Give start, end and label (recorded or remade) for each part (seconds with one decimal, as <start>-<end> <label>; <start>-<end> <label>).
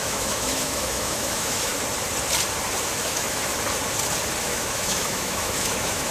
0.0-1.7 remade; 1.7-3.0 recorded; 3.0-3.5 remade; 3.5-4.4 recorded; 4.4-6.1 remade